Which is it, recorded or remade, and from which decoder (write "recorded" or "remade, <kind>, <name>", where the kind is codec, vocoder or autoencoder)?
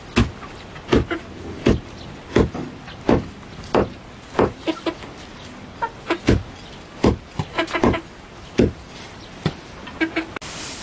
recorded